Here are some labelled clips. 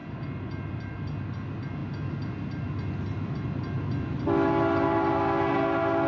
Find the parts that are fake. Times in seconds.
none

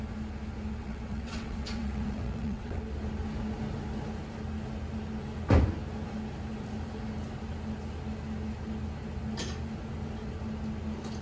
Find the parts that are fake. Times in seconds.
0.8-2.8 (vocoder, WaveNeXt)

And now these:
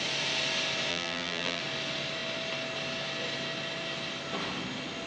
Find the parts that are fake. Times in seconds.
0.9-1.6 (vocoder, BigVGAN v2)